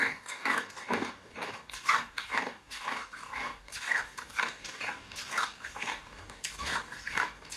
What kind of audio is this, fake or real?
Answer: fake